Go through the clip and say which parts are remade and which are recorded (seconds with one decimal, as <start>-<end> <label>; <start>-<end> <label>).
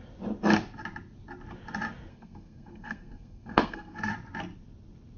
0.0-2.1 recorded; 2.1-4.1 remade; 4.1-5.2 recorded